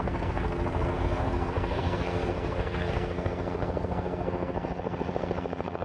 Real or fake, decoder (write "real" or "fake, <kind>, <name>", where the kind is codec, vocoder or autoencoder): fake, codec, SNAC